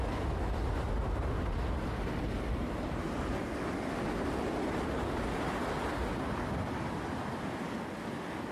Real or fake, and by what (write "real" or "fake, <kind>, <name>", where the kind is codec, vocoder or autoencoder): real